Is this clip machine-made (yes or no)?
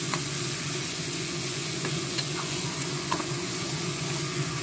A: yes